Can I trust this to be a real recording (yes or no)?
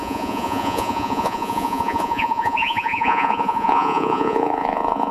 no